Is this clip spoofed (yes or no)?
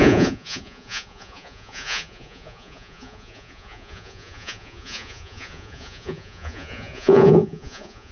yes